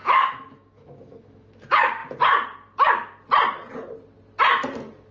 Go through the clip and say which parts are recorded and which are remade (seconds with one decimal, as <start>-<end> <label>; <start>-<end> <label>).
0.0-1.5 remade; 1.5-5.1 recorded